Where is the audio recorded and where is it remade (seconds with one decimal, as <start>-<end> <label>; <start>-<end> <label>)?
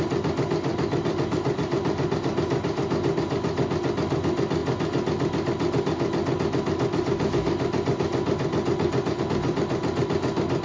0.0-0.7 recorded; 0.7-2.2 remade; 2.2-10.6 recorded